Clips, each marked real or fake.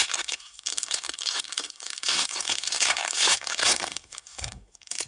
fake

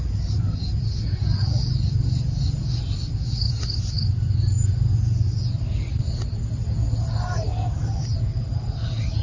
real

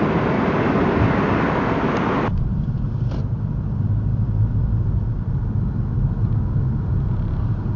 real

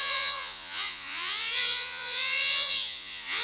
fake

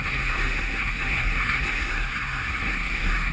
fake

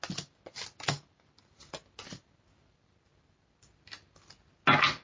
real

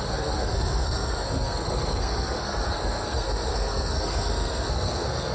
fake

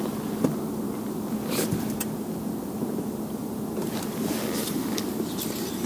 real